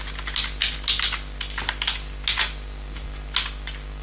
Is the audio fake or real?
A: real